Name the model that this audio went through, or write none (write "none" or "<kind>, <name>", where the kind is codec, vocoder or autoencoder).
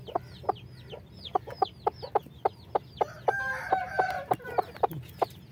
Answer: none